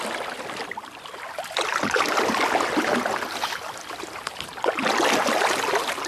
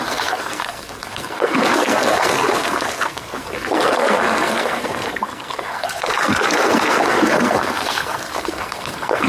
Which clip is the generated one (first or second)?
second